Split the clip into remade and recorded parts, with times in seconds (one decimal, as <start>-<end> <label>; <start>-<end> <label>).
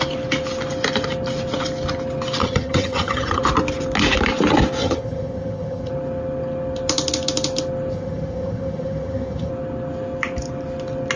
0.0-2.4 recorded; 2.4-3.4 remade; 3.4-4.8 recorded; 4.8-5.9 remade; 5.9-7.9 recorded; 7.9-9.5 remade; 9.5-11.2 recorded